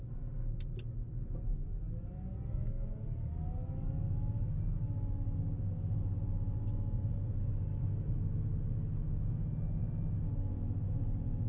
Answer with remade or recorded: recorded